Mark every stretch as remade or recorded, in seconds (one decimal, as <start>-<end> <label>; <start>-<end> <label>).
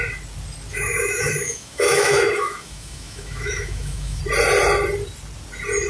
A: 0.0-0.7 recorded; 0.7-4.2 remade; 4.2-5.9 recorded